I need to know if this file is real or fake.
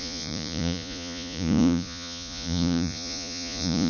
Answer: fake